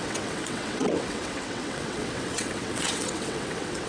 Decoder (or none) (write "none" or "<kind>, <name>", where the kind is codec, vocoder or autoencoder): vocoder, WaveNeXt